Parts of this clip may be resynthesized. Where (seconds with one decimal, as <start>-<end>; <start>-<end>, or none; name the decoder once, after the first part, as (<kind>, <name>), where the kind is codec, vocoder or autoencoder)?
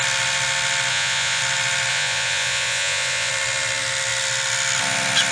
0.9-1.4 (vocoder, Vocos); 1.9-3.3